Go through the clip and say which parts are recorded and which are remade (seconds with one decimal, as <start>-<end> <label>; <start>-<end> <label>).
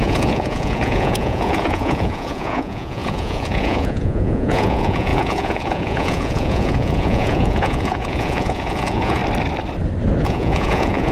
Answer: 0.0-9.2 remade; 9.2-10.2 recorded; 10.2-11.1 remade